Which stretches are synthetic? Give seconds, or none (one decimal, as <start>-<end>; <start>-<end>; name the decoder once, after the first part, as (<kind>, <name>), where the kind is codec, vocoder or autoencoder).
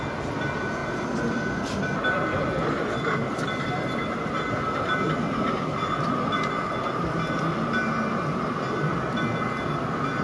none